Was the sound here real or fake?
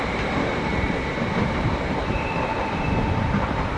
fake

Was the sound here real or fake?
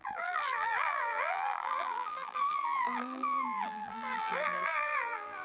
fake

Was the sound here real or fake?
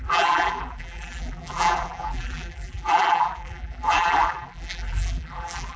fake